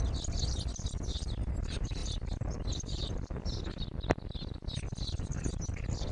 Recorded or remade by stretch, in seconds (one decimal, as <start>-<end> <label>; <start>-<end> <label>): 0.0-6.1 recorded